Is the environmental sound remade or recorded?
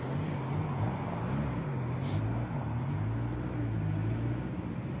recorded